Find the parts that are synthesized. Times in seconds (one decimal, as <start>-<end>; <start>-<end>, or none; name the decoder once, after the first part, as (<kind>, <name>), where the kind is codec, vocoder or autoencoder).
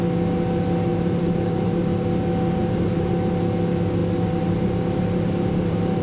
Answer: 0.9-1.8 (vocoder, BigVGAN v2); 2.6-3.1; 4.0-6.0